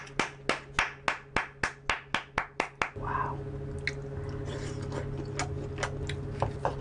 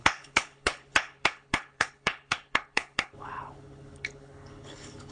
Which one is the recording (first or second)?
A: first